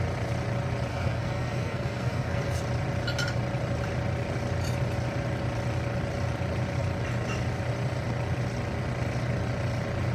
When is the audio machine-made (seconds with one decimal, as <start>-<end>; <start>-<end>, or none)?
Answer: 0.9-2.6